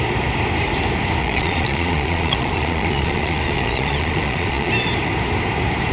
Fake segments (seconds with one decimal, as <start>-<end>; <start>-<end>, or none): 1.2-4.7